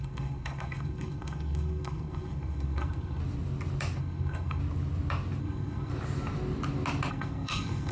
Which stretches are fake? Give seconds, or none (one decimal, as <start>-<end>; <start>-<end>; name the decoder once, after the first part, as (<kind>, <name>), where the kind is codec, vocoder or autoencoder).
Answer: 0.0-3.2 (codec, SNAC); 4.0-4.6; 5.4-5.9; 7.1-7.9